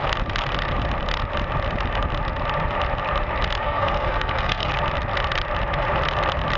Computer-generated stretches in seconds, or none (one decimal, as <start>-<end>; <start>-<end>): 3.6-4.7